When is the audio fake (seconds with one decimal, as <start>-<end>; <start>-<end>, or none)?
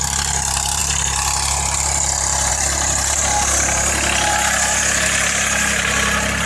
none